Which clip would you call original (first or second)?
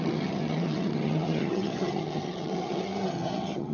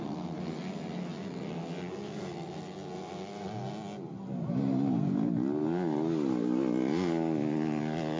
second